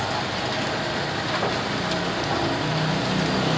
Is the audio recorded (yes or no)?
yes